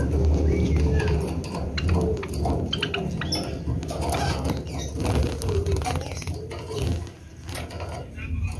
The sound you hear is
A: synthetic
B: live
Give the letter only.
B